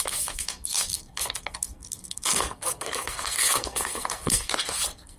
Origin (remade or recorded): remade